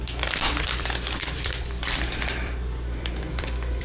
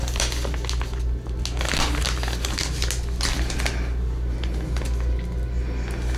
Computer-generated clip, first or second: first